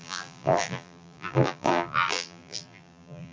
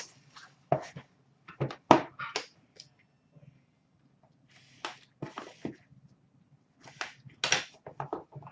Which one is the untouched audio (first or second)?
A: second